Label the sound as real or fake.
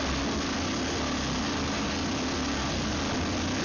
real